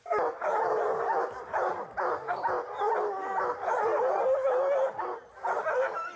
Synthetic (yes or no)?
no